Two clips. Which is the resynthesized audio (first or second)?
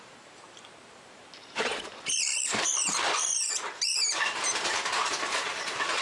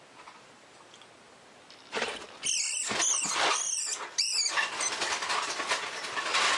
first